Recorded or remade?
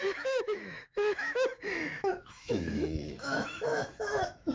remade